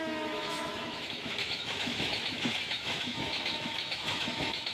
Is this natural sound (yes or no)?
no